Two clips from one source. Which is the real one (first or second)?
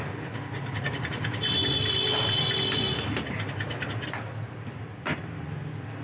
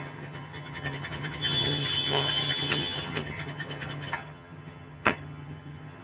first